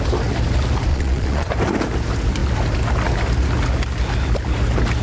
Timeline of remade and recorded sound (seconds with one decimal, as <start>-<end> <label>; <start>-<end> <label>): 0.0-0.9 recorded; 0.9-1.5 remade; 1.5-5.0 recorded